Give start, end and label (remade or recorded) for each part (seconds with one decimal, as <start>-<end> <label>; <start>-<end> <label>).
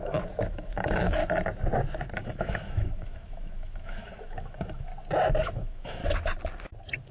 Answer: 0.0-1.2 remade; 1.2-2.2 recorded; 2.2-4.9 remade; 4.9-5.4 recorded; 5.4-6.0 remade; 6.0-7.1 recorded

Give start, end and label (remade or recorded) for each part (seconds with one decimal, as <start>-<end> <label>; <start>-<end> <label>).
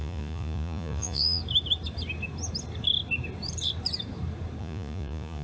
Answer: 0.0-1.4 remade; 1.4-4.6 recorded; 4.6-5.4 remade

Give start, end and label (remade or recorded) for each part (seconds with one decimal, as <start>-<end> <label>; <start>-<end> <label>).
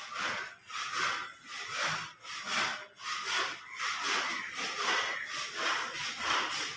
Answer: 0.0-6.8 recorded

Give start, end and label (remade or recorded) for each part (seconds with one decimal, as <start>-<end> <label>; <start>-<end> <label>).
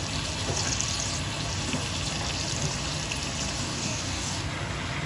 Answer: 0.0-3.6 recorded; 3.6-4.5 remade; 4.5-5.1 recorded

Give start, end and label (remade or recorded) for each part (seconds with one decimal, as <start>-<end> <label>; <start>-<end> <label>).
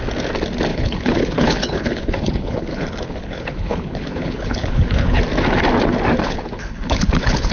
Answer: 0.0-0.7 recorded; 0.7-5.2 remade; 5.2-6.2 recorded; 6.2-7.5 remade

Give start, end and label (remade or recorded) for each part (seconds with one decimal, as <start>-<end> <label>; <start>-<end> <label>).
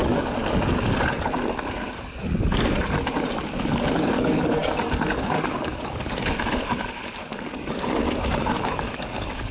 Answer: 0.0-0.4 remade; 0.4-3.5 recorded; 3.5-8.0 remade; 8.0-8.5 recorded; 8.5-9.5 remade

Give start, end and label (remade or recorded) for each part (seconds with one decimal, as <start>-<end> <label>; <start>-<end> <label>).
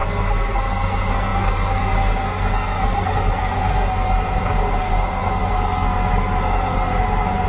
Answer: 0.0-7.5 remade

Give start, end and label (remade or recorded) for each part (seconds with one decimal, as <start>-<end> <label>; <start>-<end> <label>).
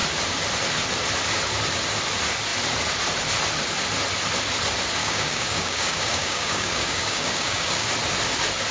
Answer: 0.0-5.0 recorded; 5.0-7.9 remade; 7.9-8.7 recorded